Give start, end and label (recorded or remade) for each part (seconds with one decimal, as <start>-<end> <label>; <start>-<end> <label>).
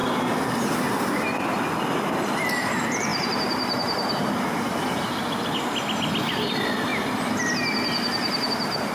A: 0.0-1.9 recorded; 1.9-4.7 remade; 4.7-6.5 recorded; 6.5-6.9 remade; 6.9-8.5 recorded; 8.5-8.9 remade